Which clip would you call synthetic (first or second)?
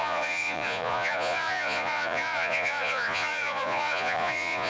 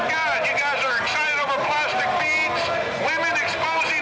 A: first